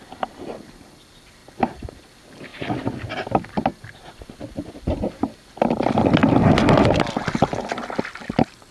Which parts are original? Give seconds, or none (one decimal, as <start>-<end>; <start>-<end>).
0.0-8.7

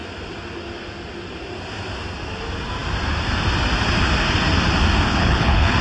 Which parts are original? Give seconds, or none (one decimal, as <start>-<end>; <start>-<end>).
0.0-5.1

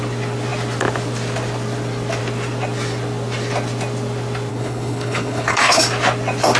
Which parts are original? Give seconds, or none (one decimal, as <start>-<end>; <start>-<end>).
0.0-4.5; 5.8-6.6

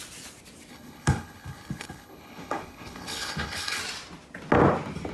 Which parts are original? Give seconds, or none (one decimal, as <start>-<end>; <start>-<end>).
0.0-0.7; 3.8-5.1

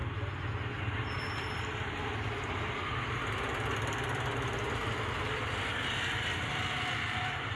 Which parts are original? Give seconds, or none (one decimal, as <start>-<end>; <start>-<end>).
0.0-7.6